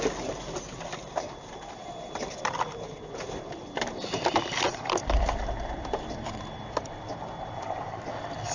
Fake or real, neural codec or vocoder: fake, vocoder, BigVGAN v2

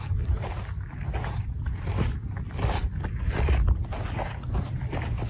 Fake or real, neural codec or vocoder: real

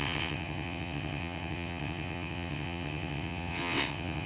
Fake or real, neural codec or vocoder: fake, vocoder, WaveNeXt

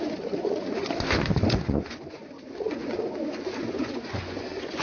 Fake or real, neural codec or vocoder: fake, vocoder, Vocos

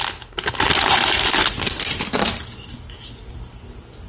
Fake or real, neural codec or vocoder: real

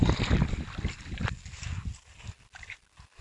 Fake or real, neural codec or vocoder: real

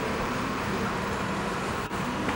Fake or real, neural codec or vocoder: fake, vocoder, BigVGAN v2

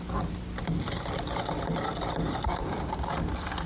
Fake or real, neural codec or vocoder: real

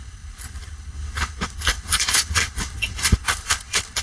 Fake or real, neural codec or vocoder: fake, codec, HILCodec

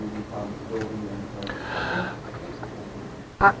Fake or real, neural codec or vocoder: real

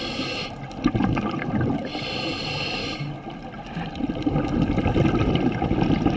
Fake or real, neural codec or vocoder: real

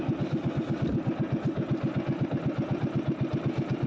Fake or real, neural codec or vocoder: real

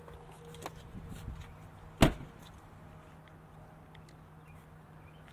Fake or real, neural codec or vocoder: real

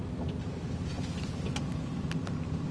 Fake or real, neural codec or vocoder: real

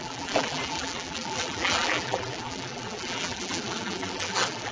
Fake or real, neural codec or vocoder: fake, vocoder, BigVGAN v2